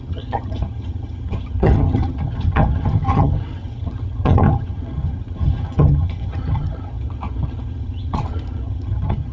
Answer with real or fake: fake